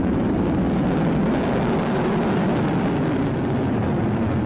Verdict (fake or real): real